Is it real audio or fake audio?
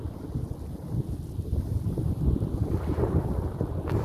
real